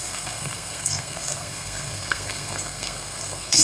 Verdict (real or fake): fake